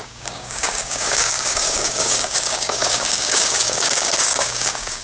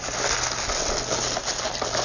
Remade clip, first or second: first